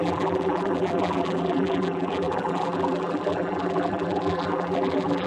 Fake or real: fake